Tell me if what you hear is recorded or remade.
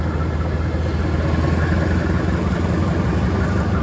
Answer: recorded